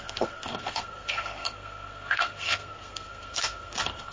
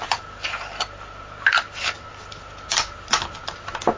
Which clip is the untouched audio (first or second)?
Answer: second